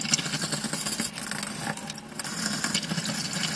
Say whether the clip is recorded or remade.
recorded